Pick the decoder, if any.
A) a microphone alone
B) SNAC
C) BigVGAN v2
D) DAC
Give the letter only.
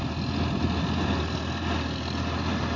A